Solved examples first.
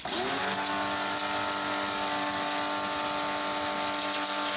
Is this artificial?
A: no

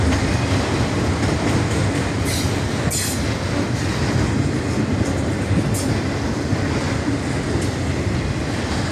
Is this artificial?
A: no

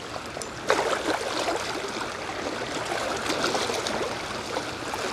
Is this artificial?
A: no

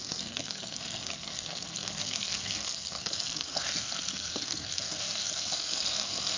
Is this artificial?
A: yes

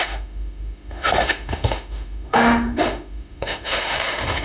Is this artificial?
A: yes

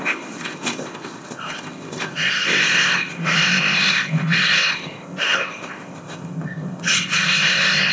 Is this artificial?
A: yes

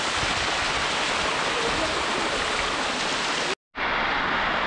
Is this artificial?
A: no